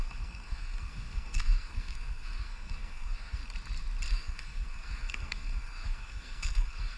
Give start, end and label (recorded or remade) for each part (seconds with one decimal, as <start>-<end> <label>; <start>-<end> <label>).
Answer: 0.0-3.4 remade; 3.4-4.1 recorded; 4.1-7.0 remade